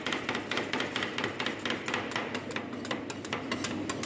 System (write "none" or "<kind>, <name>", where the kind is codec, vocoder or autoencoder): none